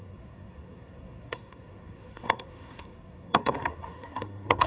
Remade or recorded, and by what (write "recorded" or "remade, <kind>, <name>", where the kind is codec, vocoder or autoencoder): remade, codec, SNAC